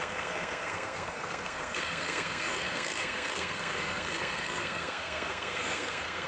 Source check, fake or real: fake